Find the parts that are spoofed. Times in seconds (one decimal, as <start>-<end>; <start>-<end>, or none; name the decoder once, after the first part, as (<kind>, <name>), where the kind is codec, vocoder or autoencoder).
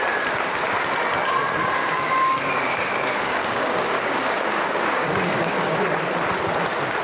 1.8-6.0 (codec, DAC)